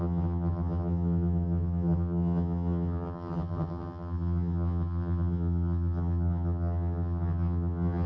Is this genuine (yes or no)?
no